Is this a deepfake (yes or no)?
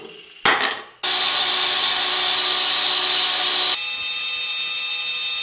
no